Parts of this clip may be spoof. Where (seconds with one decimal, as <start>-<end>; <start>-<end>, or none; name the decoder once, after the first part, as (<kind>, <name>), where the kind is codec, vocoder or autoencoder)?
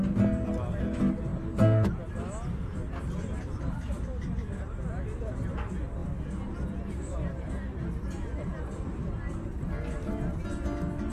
none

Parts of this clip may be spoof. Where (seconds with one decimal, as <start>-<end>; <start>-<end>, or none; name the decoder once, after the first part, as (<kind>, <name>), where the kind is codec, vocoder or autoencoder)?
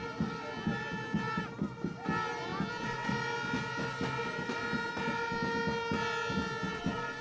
none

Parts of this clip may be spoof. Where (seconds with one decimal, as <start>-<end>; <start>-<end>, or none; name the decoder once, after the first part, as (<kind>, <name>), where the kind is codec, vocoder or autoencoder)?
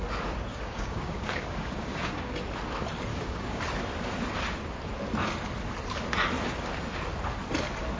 0.5-2.3 (codec, DAC); 3.1-3.6